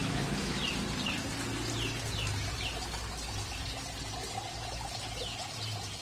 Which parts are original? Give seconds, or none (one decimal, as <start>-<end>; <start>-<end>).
0.6-6.0

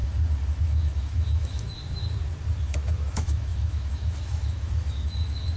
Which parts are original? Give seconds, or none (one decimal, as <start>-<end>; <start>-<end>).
0.0-0.6; 1.8-2.6

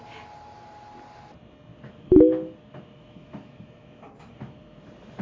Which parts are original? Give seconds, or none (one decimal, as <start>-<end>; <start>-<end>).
0.0-1.7; 4.8-5.2

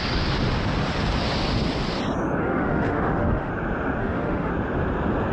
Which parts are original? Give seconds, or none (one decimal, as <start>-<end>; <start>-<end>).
0.0-2.4; 3.5-4.0; 4.5-5.3

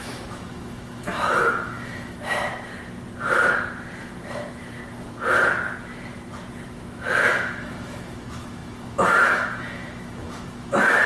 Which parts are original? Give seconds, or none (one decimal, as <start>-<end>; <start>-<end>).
2.5-4.0; 4.8-6.5

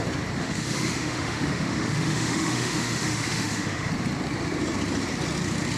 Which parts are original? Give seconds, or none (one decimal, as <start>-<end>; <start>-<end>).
0.0-0.4; 3.9-5.8